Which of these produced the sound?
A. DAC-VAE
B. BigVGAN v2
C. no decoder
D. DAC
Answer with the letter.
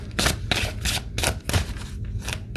C